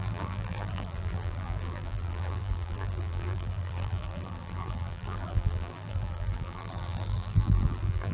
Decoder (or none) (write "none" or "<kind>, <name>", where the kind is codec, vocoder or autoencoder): vocoder, BigVGAN v2